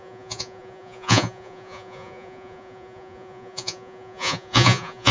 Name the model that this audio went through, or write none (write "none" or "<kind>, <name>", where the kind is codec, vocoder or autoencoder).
vocoder, Vocos